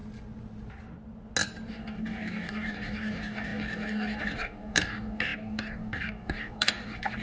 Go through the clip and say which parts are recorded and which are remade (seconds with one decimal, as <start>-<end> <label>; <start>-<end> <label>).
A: 0.0-1.7 recorded; 1.7-7.2 remade